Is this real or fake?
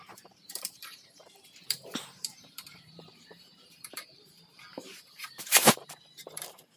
fake